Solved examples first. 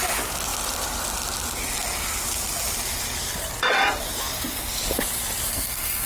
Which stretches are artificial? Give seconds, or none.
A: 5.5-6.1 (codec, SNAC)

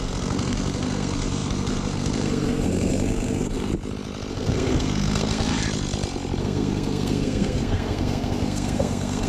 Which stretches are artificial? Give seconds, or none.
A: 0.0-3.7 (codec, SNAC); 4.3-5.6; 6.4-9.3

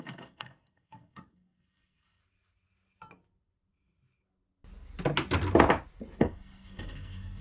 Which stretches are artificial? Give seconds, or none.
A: 0.0-2.2 (codec, SNAC); 6.2-7.4

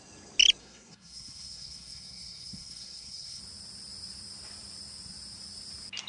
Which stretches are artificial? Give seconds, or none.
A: 0.6-3.4 (codec, SNAC)

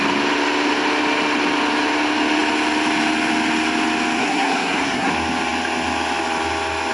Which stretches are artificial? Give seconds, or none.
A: 4.2-5.1 (codec, SNAC)

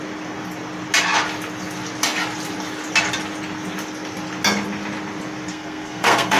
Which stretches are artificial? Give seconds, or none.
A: 5.5-6.4 (codec, SNAC)